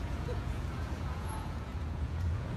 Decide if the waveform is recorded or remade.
remade